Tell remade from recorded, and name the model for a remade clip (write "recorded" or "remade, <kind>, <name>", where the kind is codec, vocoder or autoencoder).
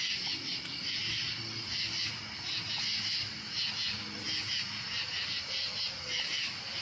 recorded